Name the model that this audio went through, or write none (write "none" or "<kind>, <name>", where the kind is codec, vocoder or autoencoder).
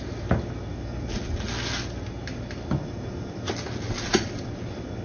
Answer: none